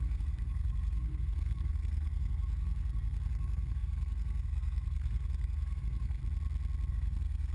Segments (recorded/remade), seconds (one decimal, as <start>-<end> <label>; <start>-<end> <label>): 0.0-6.2 remade; 6.2-6.9 recorded; 6.9-7.5 remade